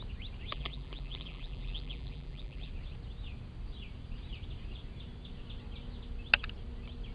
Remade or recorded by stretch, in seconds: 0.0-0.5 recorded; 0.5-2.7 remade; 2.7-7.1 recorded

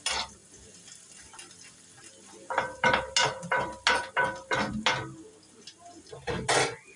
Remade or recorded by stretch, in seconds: 0.0-7.0 recorded

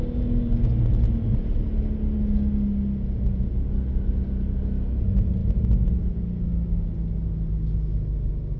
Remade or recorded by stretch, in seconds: 0.0-5.4 recorded; 5.4-6.3 remade; 6.3-8.6 recorded

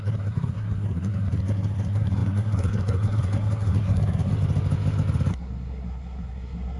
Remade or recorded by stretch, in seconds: 0.0-4.3 remade; 4.3-5.3 recorded; 5.3-6.8 remade